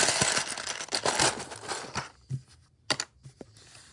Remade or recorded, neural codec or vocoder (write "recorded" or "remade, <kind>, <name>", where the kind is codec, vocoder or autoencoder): recorded